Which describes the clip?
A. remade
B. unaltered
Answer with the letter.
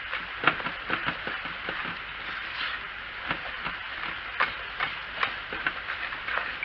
B